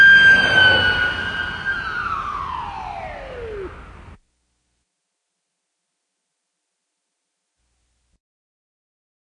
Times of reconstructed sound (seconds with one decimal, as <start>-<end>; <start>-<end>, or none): none

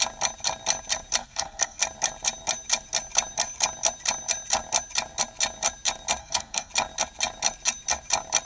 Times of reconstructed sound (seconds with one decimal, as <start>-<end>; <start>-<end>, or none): 1.2-1.8; 6.2-6.7

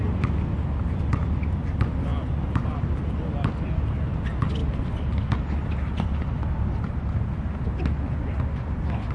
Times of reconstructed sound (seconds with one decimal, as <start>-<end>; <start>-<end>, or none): none

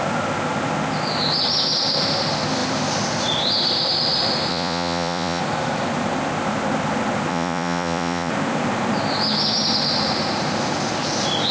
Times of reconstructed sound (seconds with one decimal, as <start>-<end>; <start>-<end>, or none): 4.5-5.4; 7.3-8.3

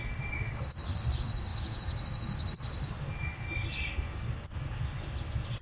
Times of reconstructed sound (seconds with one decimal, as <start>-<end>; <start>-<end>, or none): 0.0-1.5; 3.7-4.7

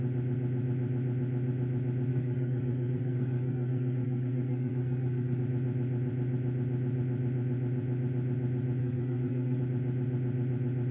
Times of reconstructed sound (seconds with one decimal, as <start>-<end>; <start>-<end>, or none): 2.1-5.4; 8.8-9.6

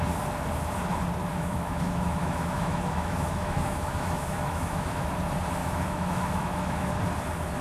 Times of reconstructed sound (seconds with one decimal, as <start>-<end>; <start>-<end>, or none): 1.3-5.1; 5.6-6.9

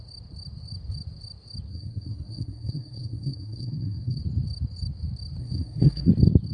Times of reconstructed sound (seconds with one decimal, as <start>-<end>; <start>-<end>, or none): 1.7-4.2; 5.4-6.1